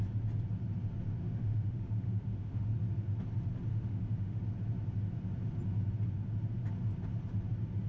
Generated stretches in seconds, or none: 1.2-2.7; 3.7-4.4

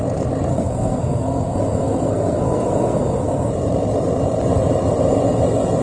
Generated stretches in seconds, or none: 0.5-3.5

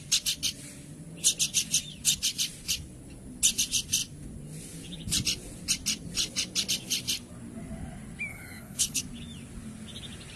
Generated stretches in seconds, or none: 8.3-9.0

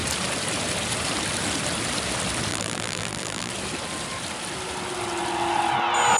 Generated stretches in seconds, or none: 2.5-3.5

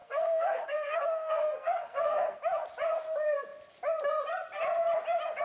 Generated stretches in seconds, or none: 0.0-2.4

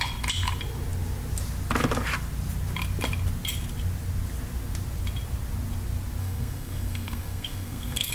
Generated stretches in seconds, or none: 6.2-8.1